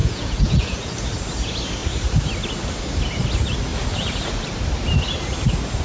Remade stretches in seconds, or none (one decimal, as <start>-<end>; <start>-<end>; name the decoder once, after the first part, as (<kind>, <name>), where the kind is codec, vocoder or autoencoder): 0.0-0.9 (vocoder, Vocos)